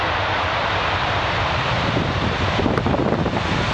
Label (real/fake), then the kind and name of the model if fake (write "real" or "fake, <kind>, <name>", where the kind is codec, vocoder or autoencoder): real